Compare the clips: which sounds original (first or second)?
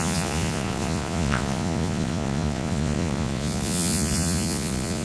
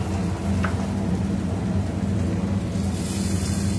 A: second